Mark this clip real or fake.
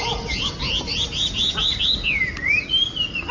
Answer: real